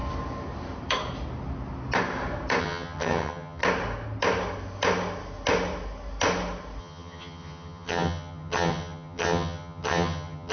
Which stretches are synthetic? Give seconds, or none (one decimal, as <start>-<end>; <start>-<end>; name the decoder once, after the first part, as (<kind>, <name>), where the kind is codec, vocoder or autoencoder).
2.6-3.6 (vocoder, HiFi-GAN); 6.8-10.5